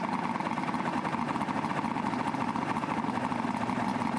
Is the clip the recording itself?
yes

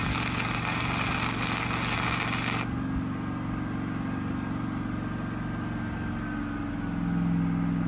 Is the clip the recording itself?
yes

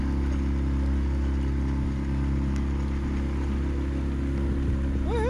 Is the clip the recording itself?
yes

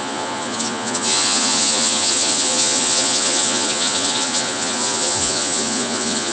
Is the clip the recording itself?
no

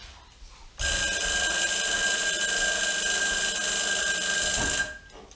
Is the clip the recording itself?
yes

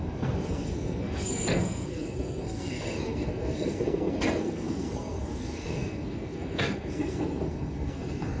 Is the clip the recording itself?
no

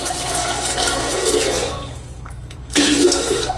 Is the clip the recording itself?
no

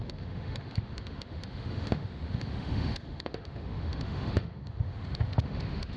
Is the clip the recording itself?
no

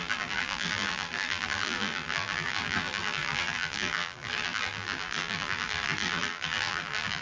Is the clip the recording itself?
no